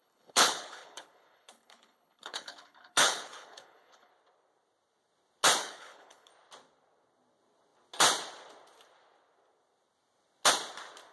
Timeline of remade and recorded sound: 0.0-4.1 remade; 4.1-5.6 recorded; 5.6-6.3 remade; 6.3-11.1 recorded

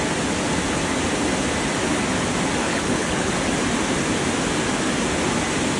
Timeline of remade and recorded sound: 0.0-2.6 recorded; 2.6-3.3 remade; 3.3-5.8 recorded

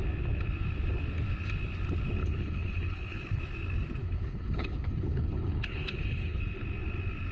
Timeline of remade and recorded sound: 0.0-2.2 recorded; 2.2-3.4 remade; 3.4-4.0 recorded; 4.0-6.4 remade; 6.4-7.3 recorded

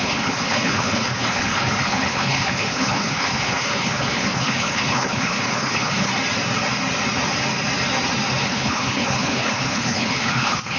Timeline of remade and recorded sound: 0.0-6.1 remade; 6.1-8.4 recorded; 8.4-10.8 remade

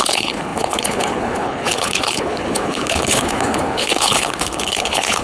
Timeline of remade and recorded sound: 0.0-5.2 remade

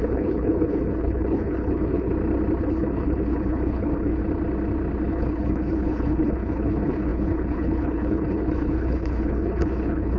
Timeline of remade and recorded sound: 0.0-2.1 remade; 2.1-2.6 recorded; 2.6-4.2 remade; 4.2-5.1 recorded; 5.1-10.2 remade

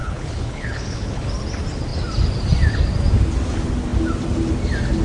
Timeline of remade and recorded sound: 0.0-1.3 remade; 1.3-5.0 recorded

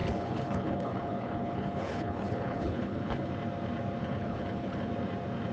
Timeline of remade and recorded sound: 0.0-3.3 remade; 3.3-4.0 recorded; 4.0-4.9 remade; 4.9-5.5 recorded